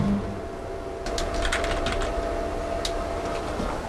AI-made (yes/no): no